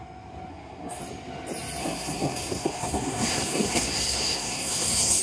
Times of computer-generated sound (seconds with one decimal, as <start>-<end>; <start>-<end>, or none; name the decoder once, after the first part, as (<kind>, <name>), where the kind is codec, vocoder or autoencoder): 0.5-1.0 (codec, SNAC); 1.8-5.2